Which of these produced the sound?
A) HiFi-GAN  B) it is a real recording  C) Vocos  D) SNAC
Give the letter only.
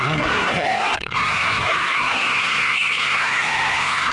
D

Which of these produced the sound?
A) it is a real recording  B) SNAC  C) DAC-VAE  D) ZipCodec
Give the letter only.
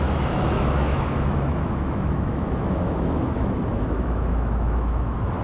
C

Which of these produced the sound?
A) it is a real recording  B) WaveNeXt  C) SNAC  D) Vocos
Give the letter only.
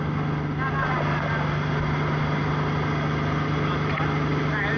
A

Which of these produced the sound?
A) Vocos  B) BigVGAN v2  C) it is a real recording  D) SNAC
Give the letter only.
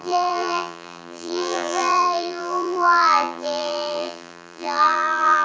B